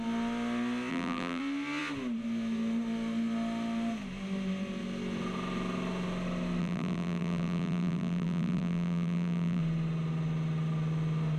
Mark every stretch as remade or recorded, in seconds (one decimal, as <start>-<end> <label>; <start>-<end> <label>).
0.0-0.9 recorded; 0.9-1.4 remade; 1.4-6.6 recorded; 6.6-9.6 remade; 9.6-11.4 recorded